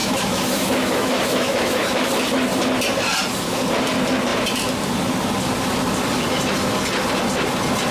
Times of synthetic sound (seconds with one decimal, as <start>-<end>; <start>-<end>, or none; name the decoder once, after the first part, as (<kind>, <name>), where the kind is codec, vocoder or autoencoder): 0.0-2.1 (autoencoder, DAC-VAE)